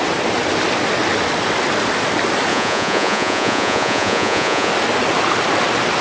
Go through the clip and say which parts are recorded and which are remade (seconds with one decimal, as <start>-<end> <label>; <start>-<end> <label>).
0.0-2.5 recorded; 2.5-4.7 remade; 4.7-6.0 recorded